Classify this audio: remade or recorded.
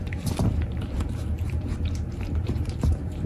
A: remade